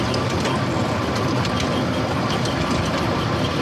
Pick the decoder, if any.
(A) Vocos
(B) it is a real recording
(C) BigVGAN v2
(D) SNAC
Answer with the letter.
B